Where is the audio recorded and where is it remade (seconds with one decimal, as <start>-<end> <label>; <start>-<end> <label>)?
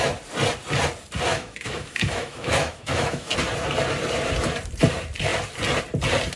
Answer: 0.0-1.3 recorded; 1.3-3.3 remade; 3.3-6.4 recorded